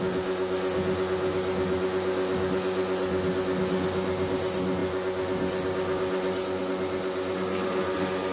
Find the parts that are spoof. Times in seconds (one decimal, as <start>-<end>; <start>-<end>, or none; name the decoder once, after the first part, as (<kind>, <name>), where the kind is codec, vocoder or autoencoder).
none